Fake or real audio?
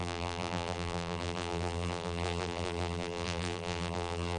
fake